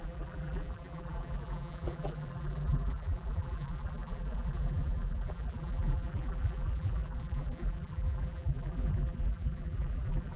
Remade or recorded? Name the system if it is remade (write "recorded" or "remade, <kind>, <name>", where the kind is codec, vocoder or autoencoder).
remade, vocoder, BigVGAN v2